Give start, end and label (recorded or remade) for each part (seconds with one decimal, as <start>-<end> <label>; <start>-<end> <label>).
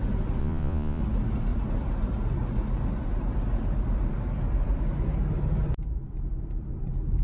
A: 0.0-0.4 recorded; 0.4-1.0 remade; 1.0-7.2 recorded